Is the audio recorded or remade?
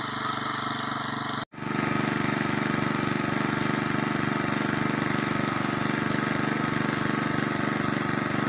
recorded